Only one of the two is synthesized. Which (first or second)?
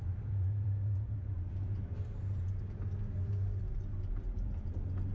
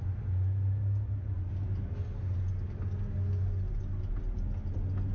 first